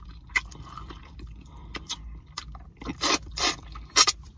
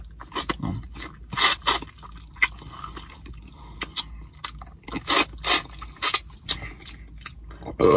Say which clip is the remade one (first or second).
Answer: first